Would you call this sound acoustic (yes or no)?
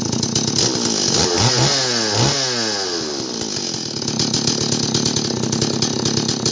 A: yes